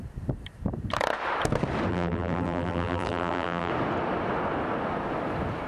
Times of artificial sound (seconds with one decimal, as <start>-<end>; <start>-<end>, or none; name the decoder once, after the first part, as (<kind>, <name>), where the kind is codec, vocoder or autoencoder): 1.9-3.7 (vocoder, BigVGAN v2)